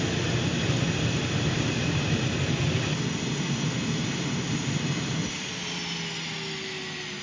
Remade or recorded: recorded